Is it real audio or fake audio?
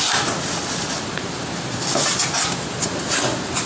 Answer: real